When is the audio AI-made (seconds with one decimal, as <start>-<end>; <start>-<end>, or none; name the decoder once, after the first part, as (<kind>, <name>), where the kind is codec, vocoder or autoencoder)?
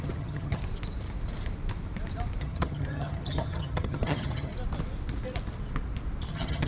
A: 0.0-0.6 (vocoder, HiFi-GAN); 2.4-4.5; 6.3-6.7